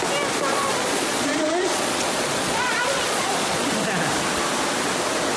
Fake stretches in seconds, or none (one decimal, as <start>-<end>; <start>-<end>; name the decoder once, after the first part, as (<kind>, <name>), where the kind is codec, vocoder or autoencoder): 0.5-3.7 (vocoder, Vocos)